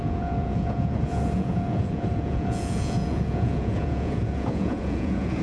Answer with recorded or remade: remade